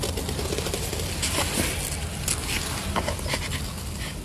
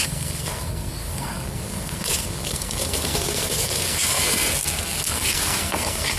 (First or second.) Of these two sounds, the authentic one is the first